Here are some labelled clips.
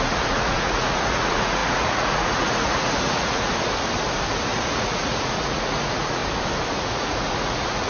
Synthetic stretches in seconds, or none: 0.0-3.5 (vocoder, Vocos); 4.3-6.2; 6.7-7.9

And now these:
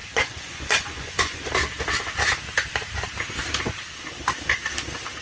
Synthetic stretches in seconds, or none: 0.0-1.5 (vocoder, Vocos)